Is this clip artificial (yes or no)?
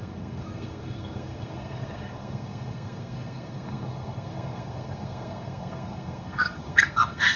yes